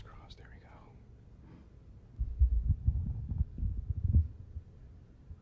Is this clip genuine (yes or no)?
yes